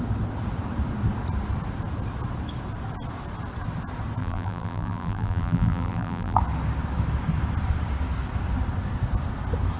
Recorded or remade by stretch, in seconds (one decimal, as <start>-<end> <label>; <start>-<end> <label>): 0.0-4.2 recorded; 4.2-6.4 remade; 6.4-9.8 recorded